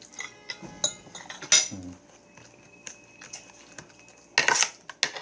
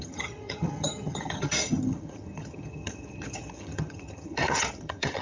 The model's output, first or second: second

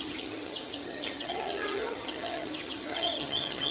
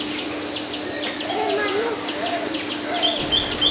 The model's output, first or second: first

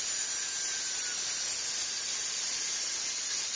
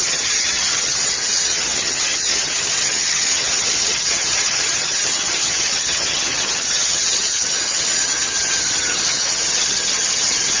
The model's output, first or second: second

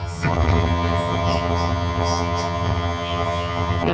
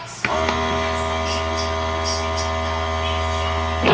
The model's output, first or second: first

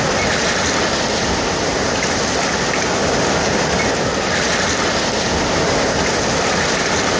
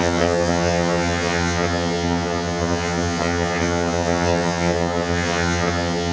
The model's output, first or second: second